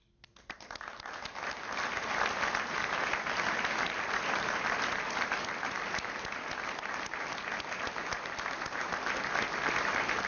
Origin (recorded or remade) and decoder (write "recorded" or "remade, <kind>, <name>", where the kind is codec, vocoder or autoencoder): recorded